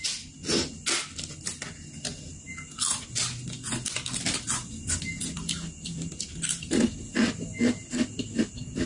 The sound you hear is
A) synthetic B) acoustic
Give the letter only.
B